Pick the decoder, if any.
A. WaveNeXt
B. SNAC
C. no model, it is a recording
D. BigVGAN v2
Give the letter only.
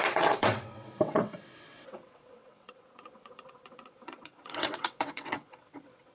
A